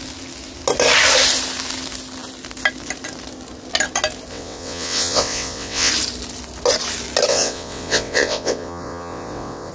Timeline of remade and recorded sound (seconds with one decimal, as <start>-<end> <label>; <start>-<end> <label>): 0.0-4.3 recorded; 4.3-5.9 remade; 5.9-7.3 recorded; 7.3-9.7 remade